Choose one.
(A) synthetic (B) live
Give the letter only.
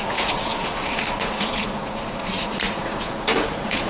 A